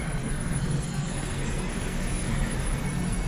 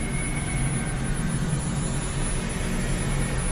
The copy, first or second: first